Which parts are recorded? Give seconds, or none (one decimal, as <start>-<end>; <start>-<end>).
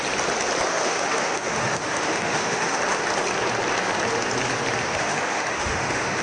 0.0-0.7; 2.8-4.8